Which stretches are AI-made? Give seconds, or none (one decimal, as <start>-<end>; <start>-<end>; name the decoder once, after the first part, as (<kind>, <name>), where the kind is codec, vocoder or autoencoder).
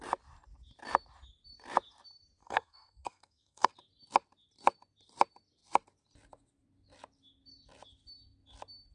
2.4-3.7 (codec, SNAC)